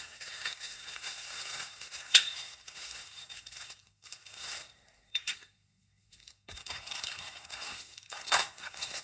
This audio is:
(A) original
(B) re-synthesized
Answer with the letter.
B